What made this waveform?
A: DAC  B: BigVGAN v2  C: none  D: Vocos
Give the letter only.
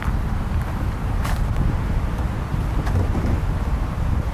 C